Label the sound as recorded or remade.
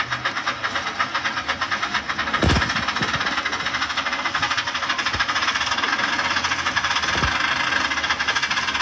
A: recorded